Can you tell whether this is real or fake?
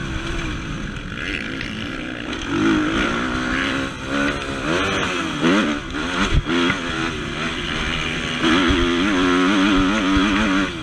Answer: real